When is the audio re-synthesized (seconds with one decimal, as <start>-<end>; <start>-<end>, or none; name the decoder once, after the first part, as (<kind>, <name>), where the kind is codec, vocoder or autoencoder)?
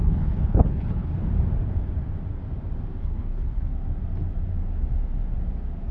0.0-1.1 (codec, HILCodec); 3.0-3.7